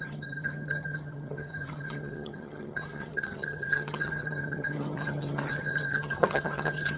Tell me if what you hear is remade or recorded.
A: remade